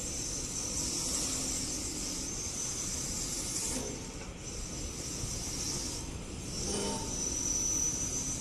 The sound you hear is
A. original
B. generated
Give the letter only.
A